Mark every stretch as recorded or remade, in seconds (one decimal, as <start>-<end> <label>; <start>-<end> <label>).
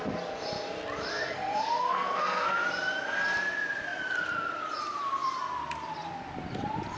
0.0-1.1 recorded; 1.1-2.5 remade; 2.5-7.0 recorded